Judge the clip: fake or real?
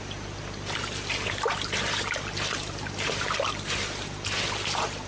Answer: real